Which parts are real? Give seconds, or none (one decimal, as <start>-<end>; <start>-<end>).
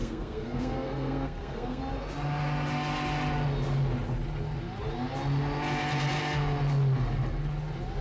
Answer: 1.8-8.0